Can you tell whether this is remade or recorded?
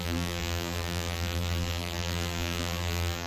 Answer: remade